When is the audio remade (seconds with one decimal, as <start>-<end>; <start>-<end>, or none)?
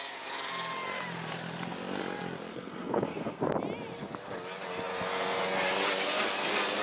2.5-3.5; 4.9-5.4